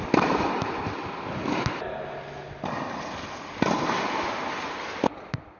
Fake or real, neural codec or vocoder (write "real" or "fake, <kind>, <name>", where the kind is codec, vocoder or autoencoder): fake, vocoder, BigVGAN v2